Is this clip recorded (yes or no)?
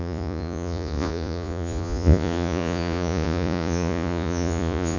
no